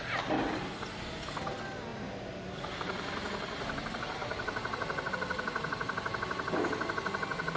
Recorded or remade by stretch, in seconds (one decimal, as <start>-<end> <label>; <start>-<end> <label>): 0.0-4.2 recorded; 4.2-5.1 remade; 5.1-7.6 recorded